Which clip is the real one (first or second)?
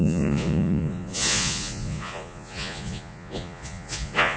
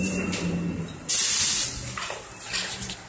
second